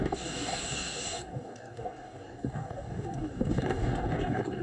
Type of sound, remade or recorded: remade